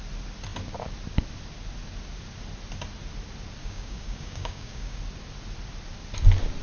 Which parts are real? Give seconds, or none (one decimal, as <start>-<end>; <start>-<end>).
0.0-3.6; 5.0-6.6